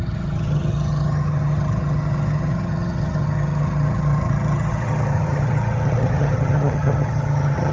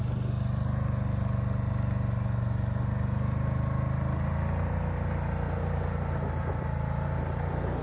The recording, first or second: second